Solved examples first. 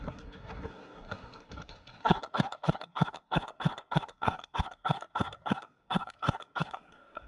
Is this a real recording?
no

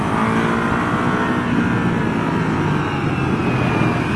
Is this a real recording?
yes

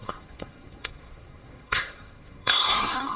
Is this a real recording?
no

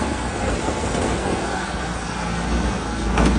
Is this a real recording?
no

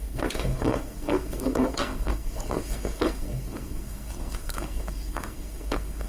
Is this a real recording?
no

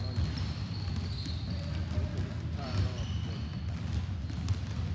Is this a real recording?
yes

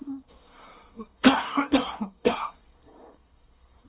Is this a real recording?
no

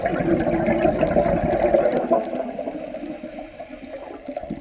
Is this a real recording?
yes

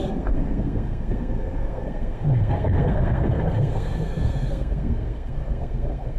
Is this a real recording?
no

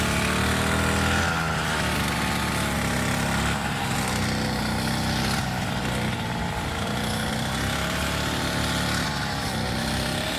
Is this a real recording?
yes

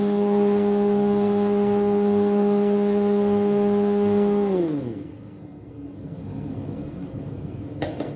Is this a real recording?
no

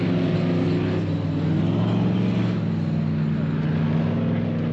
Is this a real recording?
yes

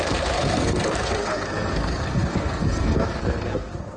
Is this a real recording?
no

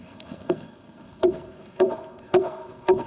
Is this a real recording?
no